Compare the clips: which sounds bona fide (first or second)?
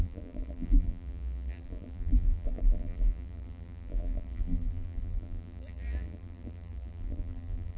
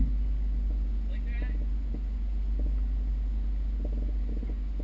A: second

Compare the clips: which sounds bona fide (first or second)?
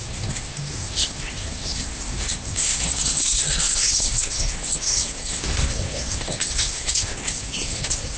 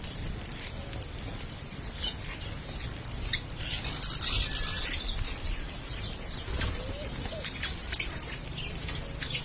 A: second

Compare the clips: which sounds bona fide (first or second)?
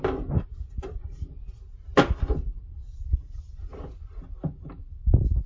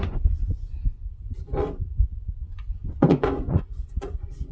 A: first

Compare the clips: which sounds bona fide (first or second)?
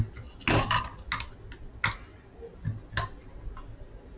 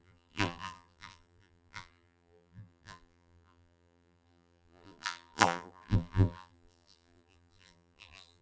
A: first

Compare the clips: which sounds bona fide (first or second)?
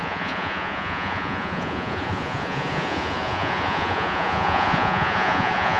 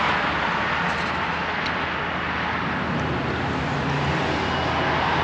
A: second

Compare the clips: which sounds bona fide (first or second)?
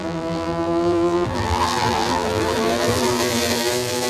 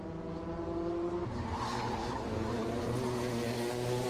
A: second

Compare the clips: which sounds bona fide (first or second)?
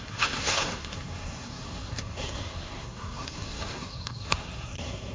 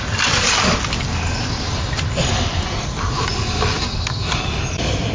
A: second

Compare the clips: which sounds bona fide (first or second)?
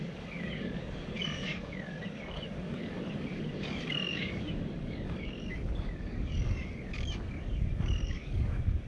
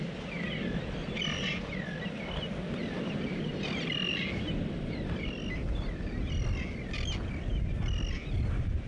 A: second